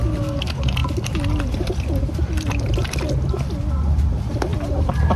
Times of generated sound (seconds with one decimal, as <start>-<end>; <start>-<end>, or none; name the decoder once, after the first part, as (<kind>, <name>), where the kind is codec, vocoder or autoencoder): none